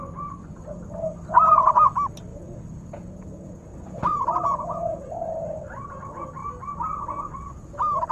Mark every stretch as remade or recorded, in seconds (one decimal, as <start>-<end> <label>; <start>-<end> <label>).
0.0-2.3 recorded; 2.3-5.0 remade; 5.0-8.1 recorded